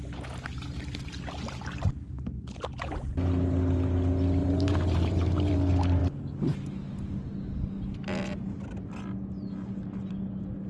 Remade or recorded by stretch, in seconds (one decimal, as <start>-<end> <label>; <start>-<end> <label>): 0.0-4.4 recorded; 4.4-5.5 remade; 5.5-10.7 recorded